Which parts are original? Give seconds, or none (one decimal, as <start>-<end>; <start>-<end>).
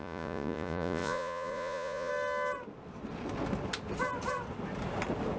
2.1-5.4